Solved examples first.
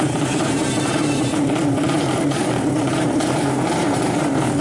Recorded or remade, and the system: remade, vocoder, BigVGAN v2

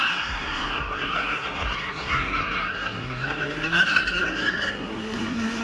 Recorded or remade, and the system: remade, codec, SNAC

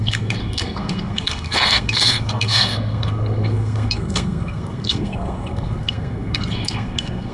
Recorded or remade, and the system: remade, codec, SNAC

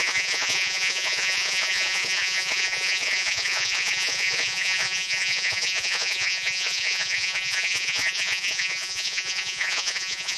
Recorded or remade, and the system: remade, vocoder, Vocos